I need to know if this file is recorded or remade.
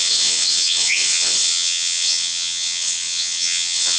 remade